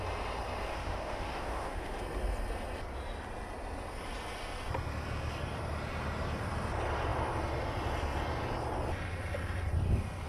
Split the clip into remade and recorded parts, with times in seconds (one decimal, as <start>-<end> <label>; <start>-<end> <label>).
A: 0.0-0.7 recorded; 0.7-2.0 remade; 2.0-10.3 recorded